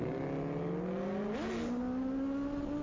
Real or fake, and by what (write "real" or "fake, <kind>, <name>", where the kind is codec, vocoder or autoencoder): real